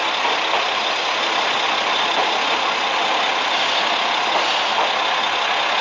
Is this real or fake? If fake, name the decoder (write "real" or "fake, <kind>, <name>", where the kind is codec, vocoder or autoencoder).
real